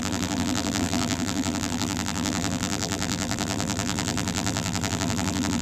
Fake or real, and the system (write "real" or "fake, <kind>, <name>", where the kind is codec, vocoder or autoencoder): fake, vocoder, BigVGAN v2